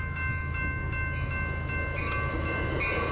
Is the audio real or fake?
real